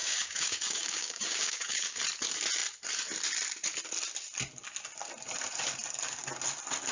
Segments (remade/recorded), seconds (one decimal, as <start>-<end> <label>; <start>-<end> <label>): 0.0-2.0 remade; 2.0-6.9 recorded

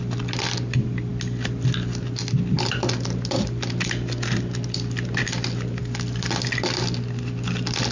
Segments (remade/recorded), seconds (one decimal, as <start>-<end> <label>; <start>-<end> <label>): 0.0-7.9 recorded

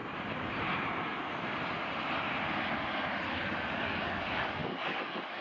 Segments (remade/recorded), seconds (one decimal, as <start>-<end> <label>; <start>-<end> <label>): 0.0-3.2 recorded; 3.2-5.4 remade

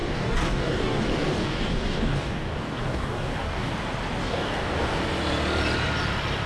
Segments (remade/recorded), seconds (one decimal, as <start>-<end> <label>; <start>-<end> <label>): 0.0-3.7 remade; 3.7-4.2 recorded; 4.2-5.0 remade; 5.0-6.5 recorded

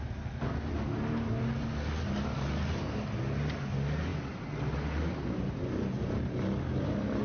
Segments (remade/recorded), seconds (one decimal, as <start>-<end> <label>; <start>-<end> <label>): 0.0-7.2 recorded

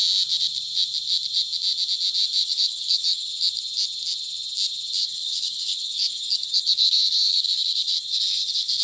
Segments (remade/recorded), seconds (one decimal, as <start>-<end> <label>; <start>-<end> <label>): 0.0-2.4 recorded; 2.4-3.3 remade; 3.3-5.0 recorded; 5.0-8.8 remade

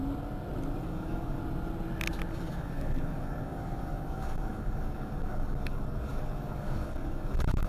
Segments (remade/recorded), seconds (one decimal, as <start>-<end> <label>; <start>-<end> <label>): 0.0-0.8 recorded; 0.8-1.4 remade; 1.4-2.3 recorded; 2.3-7.7 remade